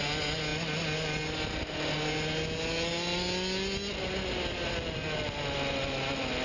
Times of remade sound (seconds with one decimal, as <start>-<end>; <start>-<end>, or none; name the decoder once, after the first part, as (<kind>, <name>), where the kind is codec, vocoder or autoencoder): none